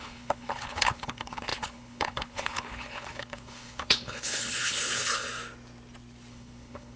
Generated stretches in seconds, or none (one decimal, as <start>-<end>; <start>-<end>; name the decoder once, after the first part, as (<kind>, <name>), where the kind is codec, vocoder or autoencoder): 0.0-5.3 (codec, HILCodec); 6.3-7.0